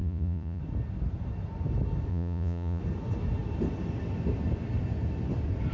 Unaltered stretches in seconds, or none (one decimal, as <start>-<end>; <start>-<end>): 0.6-2.1; 2.8-5.7